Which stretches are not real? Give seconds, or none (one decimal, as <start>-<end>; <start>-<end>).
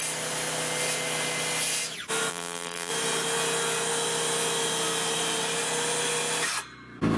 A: 2.3-2.9